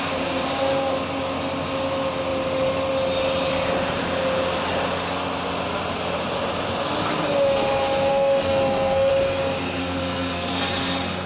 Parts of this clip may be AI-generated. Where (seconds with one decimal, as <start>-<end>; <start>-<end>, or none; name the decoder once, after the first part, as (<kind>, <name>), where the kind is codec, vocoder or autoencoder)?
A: 8.1-9.1 (codec, SNAC); 9.8-10.6